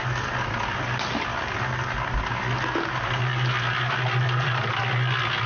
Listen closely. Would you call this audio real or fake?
real